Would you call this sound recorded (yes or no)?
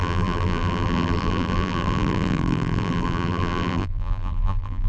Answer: no